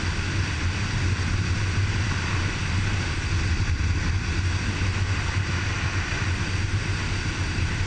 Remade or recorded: recorded